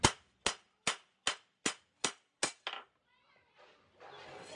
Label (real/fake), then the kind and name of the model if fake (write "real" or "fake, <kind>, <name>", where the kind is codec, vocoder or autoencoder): real